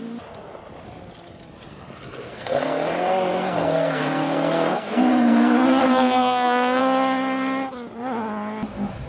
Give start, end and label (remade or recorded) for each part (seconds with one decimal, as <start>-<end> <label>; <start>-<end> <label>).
0.0-1.7 recorded; 1.7-6.8 remade; 6.8-9.1 recorded